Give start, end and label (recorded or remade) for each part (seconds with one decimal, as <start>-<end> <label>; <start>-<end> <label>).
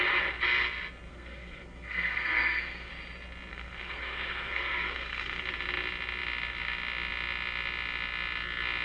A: 0.0-1.1 recorded; 1.1-2.9 remade; 2.9-3.5 recorded; 3.5-5.4 remade; 5.4-8.8 recorded